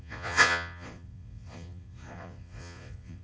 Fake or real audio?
fake